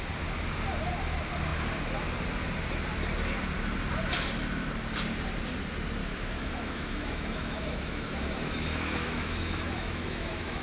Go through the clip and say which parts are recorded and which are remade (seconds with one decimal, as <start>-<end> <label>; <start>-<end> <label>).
0.0-6.0 recorded; 6.0-10.6 remade